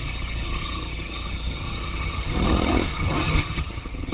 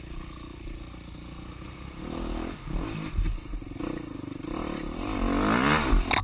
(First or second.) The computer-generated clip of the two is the first